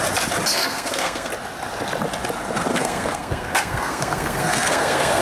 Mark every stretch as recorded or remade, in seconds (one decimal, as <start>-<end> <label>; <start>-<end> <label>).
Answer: 0.0-0.5 recorded; 0.5-1.3 remade; 1.3-2.7 recorded; 2.7-5.2 remade